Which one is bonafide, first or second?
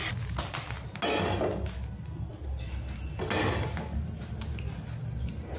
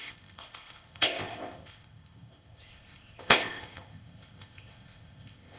first